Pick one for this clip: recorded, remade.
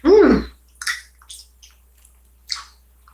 recorded